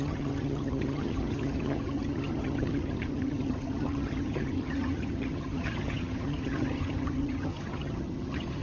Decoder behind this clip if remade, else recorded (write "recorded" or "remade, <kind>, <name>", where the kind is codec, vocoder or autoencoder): remade, vocoder, HiFi-GAN